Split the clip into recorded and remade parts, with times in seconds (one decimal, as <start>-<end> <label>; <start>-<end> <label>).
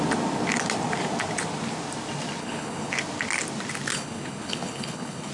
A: 0.0-2.4 recorded; 2.4-2.9 remade; 2.9-3.9 recorded; 3.9-5.3 remade